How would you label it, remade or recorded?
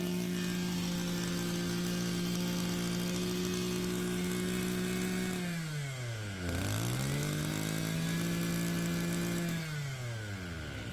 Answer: recorded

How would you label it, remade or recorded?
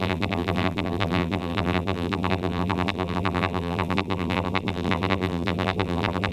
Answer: remade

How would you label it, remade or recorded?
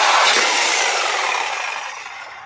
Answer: recorded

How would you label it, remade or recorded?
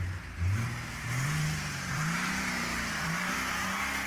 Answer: remade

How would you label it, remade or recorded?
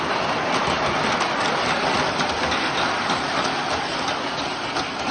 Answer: recorded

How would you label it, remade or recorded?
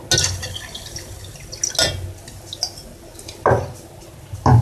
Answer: recorded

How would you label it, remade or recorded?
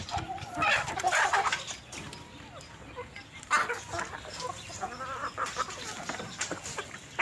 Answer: recorded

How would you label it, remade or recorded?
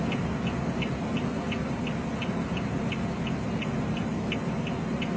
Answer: recorded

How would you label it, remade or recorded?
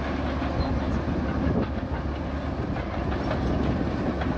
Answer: recorded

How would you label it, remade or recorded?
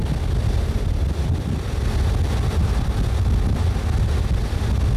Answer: recorded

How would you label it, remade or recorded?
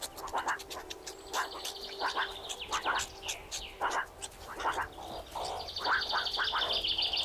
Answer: recorded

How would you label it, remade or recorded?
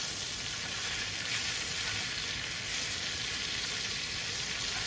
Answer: recorded